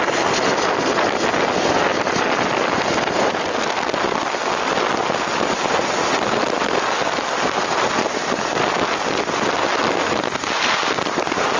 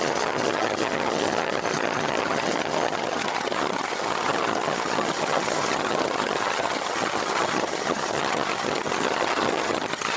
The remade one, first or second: second